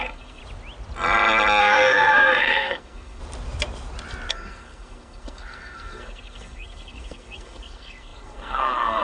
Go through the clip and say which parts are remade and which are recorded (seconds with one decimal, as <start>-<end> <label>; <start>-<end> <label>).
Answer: 0.0-0.4 remade; 0.4-1.6 recorded; 1.6-3.2 remade; 3.2-4.3 recorded; 4.3-9.0 remade